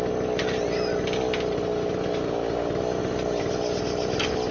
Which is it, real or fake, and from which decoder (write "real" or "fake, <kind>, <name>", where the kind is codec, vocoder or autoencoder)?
real